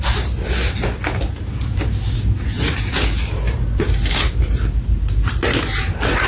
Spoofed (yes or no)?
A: no